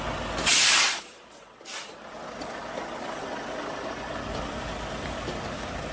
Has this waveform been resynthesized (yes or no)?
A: no